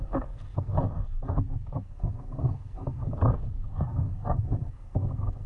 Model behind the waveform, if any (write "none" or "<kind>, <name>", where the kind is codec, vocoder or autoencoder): codec, SNAC